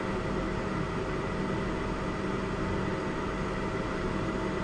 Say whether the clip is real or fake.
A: real